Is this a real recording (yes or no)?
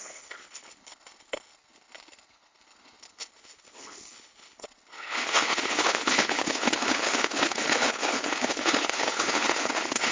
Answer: no